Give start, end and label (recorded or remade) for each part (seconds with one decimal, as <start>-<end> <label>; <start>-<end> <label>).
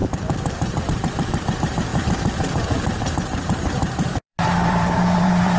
0.0-5.6 remade